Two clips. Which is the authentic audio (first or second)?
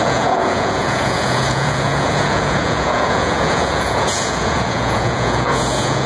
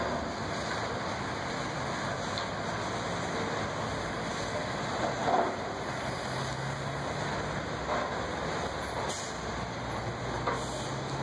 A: second